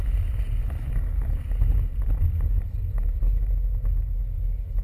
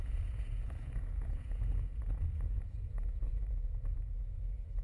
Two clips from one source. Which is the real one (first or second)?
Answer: first